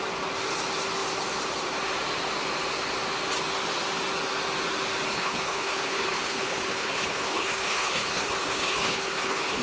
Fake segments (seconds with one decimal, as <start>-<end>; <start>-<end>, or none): 5.1-9.6